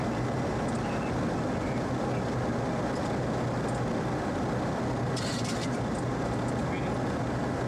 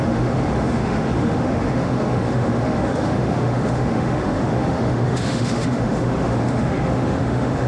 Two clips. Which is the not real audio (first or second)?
second